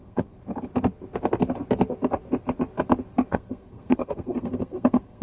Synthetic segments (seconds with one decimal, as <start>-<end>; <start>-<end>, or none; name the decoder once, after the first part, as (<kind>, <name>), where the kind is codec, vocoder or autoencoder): 0.0-0.4 (codec, SNAC); 3.3-5.2